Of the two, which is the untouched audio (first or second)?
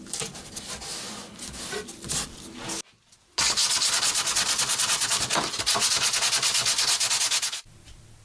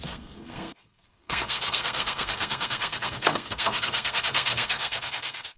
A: first